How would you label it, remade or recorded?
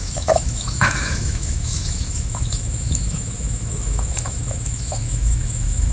remade